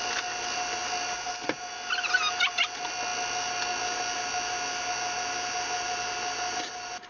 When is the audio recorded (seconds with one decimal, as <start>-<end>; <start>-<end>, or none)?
0.0-7.1